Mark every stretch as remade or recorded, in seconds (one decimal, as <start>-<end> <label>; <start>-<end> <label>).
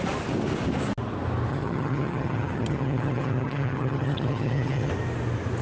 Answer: 0.0-1.5 recorded; 1.5-4.9 remade; 4.9-5.6 recorded